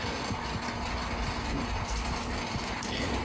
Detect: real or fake real